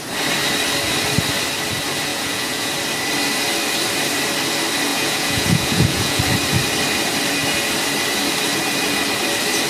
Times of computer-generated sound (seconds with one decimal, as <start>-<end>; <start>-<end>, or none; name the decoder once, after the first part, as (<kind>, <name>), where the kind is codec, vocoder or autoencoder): 2.1-2.7 (vocoder, Vocos); 4.9-6.2